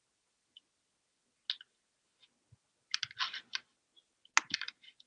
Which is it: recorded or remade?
recorded